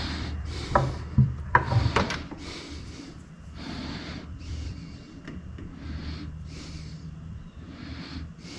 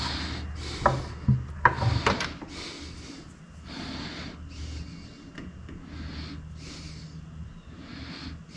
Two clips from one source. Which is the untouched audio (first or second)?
second